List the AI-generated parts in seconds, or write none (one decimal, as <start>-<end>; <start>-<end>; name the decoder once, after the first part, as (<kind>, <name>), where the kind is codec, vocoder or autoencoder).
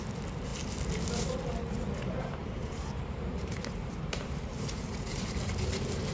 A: 2.4-6.1 (vocoder, BigVGAN v2)